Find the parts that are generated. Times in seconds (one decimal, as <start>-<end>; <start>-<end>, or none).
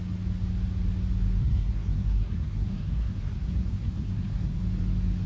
1.4-4.6